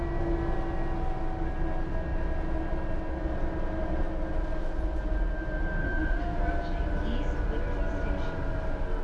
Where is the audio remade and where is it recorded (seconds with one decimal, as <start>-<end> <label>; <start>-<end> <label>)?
0.0-5.8 recorded; 5.8-6.4 remade; 6.4-9.0 recorded